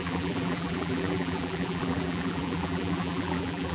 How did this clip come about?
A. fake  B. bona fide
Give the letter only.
A